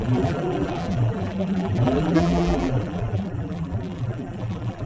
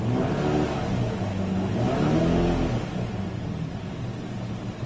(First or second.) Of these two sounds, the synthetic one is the first